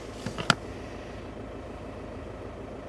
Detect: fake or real real